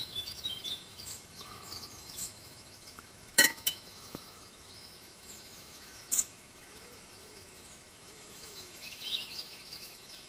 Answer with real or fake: fake